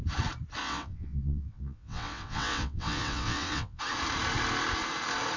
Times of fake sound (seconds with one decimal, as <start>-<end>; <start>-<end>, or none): 0.6-3.8